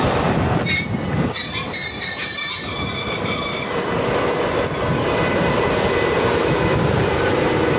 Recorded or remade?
remade